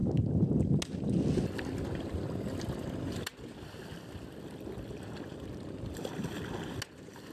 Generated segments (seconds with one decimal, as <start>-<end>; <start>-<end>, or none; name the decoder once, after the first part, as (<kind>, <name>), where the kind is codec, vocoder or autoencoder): none